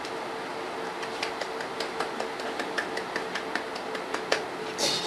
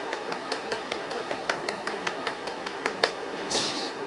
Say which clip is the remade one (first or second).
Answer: second